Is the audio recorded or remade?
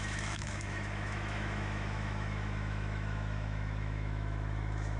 remade